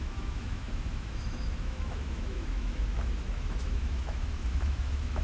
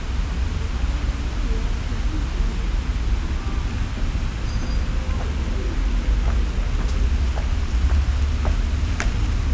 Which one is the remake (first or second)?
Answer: first